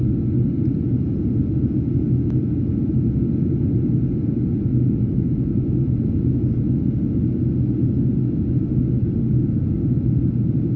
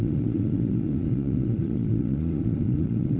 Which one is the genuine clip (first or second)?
first